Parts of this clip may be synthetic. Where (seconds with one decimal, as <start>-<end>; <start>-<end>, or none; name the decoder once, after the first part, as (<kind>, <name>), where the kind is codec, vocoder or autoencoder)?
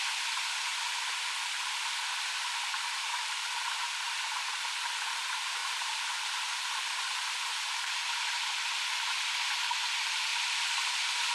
0.0-11.3 (vocoder, BigVGAN v2)